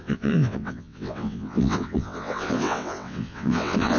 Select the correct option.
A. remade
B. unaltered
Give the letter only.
A